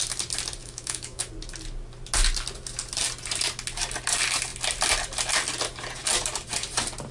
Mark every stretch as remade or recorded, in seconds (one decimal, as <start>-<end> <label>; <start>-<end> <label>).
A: 0.0-0.6 recorded; 0.6-1.3 remade; 1.3-7.1 recorded